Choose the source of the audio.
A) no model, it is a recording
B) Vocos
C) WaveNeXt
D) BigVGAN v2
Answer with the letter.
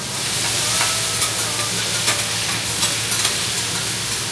A